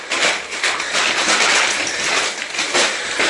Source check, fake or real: real